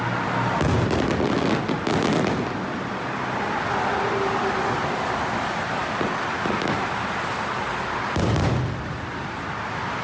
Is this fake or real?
real